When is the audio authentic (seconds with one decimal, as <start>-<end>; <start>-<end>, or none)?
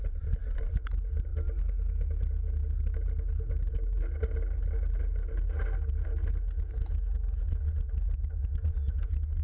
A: 0.0-9.4